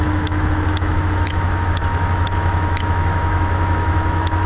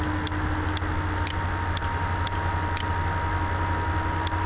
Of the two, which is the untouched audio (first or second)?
second